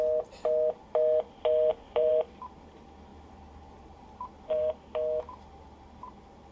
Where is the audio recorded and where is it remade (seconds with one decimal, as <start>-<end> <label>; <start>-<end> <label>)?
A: 0.0-1.7 recorded; 1.7-2.5 remade; 2.5-3.1 recorded; 3.1-4.7 remade; 4.7-6.5 recorded